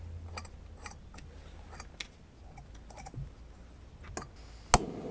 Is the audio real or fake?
real